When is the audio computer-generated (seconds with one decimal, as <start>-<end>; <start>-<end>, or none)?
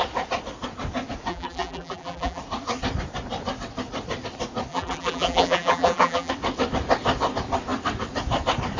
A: 1.3-2.4; 4.7-6.3